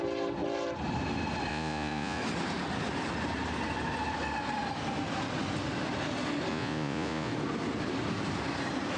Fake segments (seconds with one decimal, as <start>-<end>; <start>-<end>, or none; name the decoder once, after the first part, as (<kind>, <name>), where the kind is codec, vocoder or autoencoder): 1.5-2.2 (vocoder, Vocos); 6.5-7.3